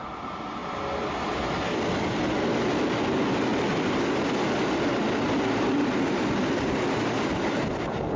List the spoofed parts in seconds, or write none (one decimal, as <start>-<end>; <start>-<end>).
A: none